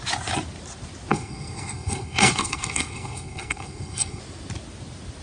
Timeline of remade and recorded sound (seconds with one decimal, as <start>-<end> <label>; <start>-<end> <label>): 0.0-1.1 recorded; 1.1-4.2 remade; 4.2-5.2 recorded